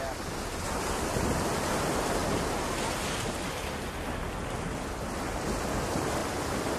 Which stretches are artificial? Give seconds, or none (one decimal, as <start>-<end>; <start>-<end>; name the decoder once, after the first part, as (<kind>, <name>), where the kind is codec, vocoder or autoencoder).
none